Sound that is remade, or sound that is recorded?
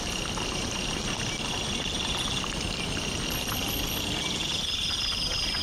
recorded